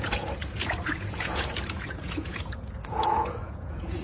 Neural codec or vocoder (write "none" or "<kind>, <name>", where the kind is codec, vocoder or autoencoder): vocoder, Vocos